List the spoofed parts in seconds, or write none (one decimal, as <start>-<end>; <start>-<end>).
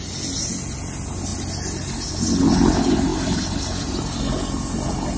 3.1-4.2